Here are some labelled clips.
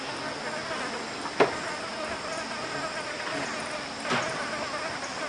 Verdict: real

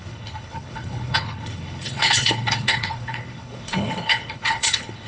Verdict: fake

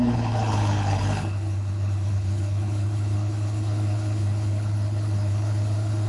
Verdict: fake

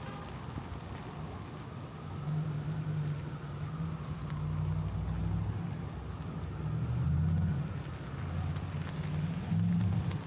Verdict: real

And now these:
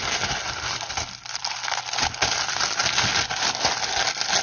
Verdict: real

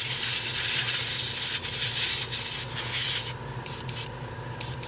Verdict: real